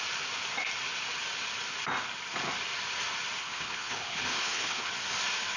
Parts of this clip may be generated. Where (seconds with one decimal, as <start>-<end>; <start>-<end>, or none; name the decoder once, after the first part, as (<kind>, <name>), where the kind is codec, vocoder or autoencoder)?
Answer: 3.4-4.9 (codec, HILCodec)